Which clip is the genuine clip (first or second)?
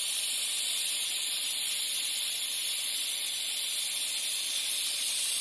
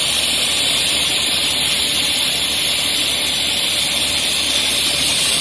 first